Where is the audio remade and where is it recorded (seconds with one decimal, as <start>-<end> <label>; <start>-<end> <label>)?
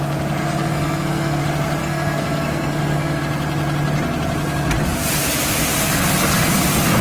0.0-0.4 recorded; 0.4-1.4 remade; 1.4-1.8 recorded; 1.8-3.2 remade; 3.2-7.0 recorded